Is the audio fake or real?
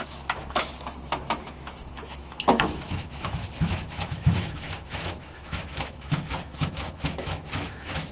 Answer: fake